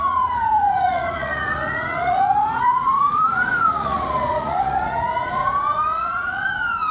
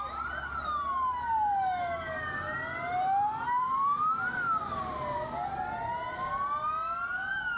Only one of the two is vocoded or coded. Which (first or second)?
first